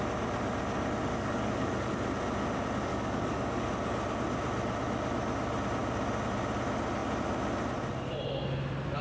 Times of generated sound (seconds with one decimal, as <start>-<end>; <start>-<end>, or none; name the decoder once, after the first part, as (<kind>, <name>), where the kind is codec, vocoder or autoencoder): 1.1-1.9 (codec, DAC); 2.9-3.7